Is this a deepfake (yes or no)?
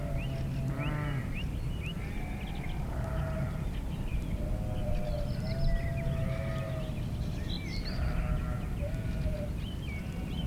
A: no